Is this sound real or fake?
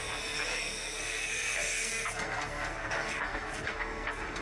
fake